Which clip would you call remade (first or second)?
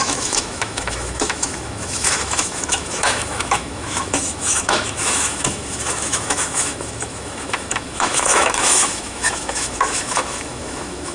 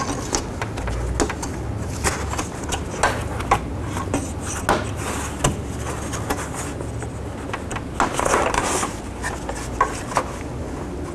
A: first